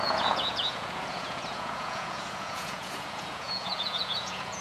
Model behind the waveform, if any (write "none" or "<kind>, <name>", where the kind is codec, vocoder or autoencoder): vocoder, Vocos